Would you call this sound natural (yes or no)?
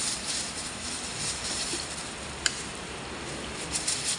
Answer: no